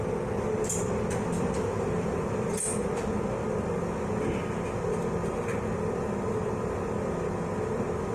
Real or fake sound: real